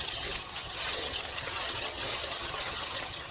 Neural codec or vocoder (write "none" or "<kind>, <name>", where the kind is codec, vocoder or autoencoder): vocoder, HiFi-GAN